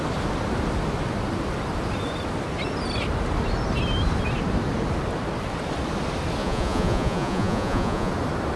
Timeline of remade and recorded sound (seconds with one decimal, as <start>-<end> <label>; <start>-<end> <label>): 0.0-6.4 recorded; 6.4-8.1 remade; 8.1-8.6 recorded